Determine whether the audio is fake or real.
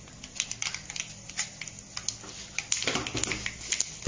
real